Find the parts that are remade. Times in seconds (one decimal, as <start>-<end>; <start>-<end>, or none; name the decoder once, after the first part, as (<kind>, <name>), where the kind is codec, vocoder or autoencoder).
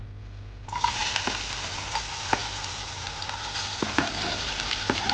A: none